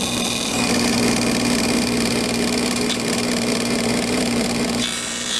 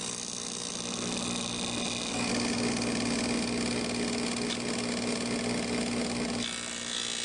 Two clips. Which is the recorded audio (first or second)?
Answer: second